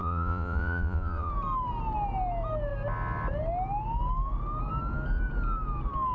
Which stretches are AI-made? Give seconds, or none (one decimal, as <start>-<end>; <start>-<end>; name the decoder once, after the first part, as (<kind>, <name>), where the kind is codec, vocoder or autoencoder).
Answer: 0.0-1.3 (vocoder, Vocos)